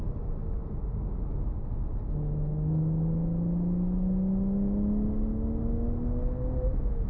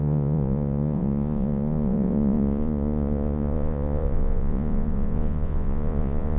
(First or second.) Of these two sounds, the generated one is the second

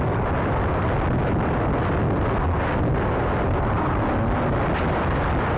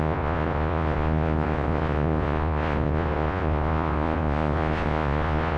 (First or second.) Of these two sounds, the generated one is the second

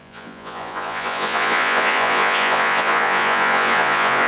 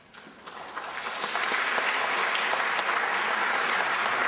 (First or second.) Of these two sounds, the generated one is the first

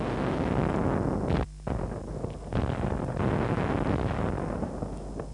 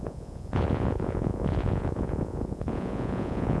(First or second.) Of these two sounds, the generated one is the second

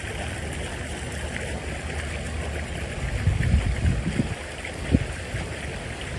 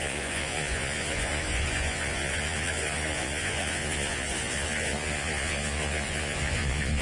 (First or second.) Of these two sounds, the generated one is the second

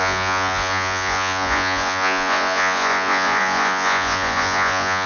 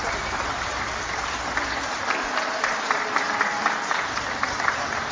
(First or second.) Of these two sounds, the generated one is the first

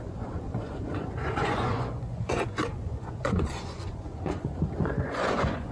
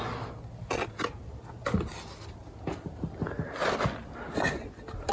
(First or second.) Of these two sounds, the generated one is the first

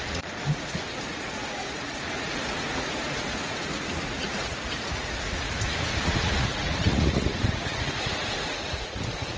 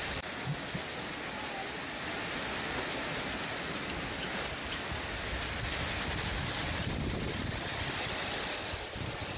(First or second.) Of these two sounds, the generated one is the first